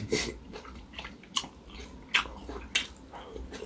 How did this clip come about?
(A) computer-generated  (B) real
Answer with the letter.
B